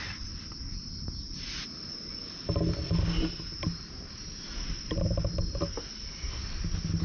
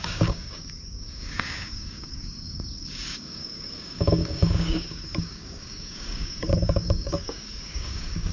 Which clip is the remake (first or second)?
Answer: second